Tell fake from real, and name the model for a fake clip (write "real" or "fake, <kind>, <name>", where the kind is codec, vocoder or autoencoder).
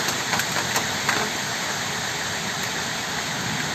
real